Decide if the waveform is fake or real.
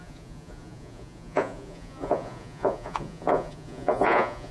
fake